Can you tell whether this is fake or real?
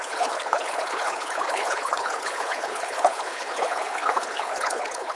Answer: fake